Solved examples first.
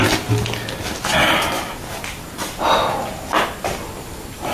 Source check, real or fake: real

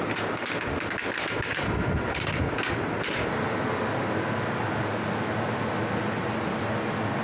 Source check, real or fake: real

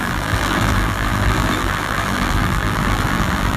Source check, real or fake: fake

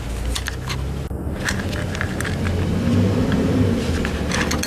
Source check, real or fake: real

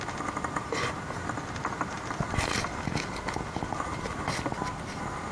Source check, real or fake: real